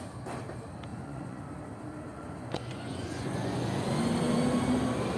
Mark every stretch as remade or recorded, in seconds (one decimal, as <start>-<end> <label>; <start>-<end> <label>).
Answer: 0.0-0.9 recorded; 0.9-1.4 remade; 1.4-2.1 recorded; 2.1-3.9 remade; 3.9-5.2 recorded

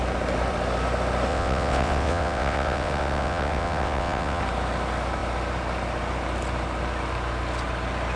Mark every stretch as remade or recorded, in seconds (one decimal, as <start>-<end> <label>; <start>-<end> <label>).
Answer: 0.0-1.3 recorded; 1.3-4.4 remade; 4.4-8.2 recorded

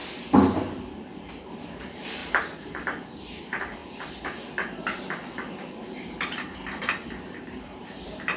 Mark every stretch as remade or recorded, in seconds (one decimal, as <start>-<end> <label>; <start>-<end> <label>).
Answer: 0.0-0.9 recorded; 0.9-3.8 remade; 3.8-7.2 recorded; 7.2-8.4 remade

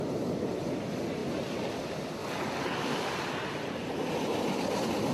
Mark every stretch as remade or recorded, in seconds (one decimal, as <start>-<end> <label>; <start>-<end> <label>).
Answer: 0.0-5.1 recorded

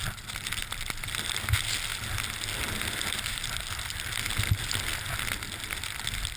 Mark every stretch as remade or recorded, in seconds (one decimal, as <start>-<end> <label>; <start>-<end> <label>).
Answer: 0.0-6.4 recorded

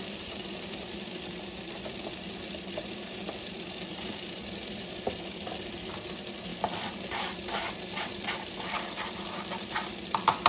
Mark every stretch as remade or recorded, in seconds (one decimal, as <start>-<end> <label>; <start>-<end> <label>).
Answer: 0.0-6.5 remade; 6.5-9.2 recorded; 9.2-10.5 remade

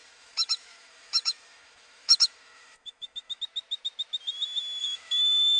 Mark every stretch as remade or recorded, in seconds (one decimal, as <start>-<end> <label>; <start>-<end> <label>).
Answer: 0.0-3.4 remade; 3.4-4.8 recorded; 4.8-5.6 remade

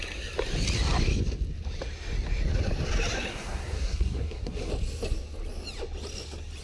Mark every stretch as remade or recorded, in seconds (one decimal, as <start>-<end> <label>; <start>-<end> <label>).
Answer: 0.0-3.3 recorded; 3.3-4.7 remade; 4.7-6.6 recorded